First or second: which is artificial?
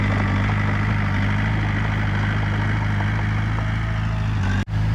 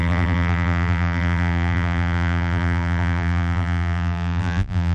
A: second